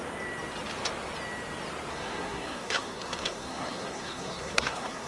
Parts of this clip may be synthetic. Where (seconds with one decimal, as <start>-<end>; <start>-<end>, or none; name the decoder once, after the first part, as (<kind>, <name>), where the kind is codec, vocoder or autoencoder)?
1.9-5.1 (codec, SNAC)

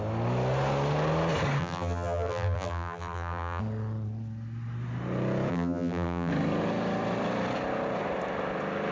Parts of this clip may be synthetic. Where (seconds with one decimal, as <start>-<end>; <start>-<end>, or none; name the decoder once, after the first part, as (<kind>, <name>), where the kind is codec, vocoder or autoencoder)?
1.6-3.6 (vocoder, BigVGAN v2); 5.5-6.3

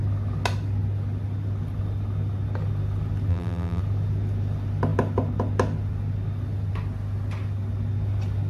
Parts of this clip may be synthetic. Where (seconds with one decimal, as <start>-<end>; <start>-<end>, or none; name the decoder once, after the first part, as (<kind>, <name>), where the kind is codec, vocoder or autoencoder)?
3.3-3.8 (vocoder, BigVGAN v2)

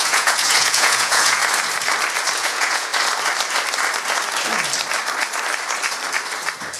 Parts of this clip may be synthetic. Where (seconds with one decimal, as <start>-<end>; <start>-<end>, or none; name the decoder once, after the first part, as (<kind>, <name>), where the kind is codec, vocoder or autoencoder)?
0.0-1.4 (vocoder, Vocos); 2.4-2.9

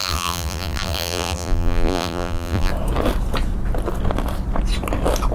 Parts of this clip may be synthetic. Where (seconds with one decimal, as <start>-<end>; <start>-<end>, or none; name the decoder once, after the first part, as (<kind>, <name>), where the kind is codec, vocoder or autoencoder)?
0.0-2.7 (vocoder, BigVGAN v2)

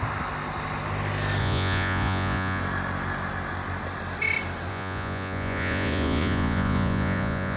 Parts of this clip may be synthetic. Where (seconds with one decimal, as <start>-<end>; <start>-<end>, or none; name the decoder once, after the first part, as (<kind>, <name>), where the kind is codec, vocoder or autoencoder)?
1.4-2.6 (vocoder, Vocos); 4.7-7.6

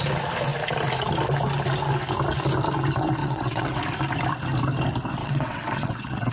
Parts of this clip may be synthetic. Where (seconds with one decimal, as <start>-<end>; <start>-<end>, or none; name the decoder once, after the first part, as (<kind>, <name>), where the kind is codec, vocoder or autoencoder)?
3.2-3.8 (vocoder, WaveNeXt); 5.2-6.3

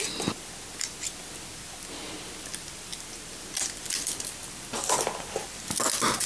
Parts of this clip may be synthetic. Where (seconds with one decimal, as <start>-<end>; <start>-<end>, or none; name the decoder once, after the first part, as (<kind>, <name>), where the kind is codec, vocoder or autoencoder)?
2.9-5.7 (vocoder, BigVGAN v2)